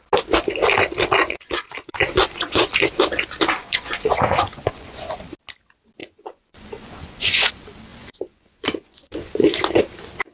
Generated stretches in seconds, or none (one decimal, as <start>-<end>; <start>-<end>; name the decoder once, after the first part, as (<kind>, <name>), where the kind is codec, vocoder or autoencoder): 1.2-2.7 (vocoder, Vocos); 3.6-5.2; 6.0-7.5; 7.9-9.7